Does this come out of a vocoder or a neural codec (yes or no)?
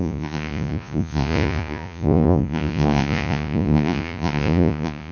yes